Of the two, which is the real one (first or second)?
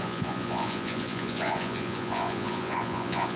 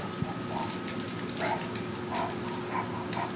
second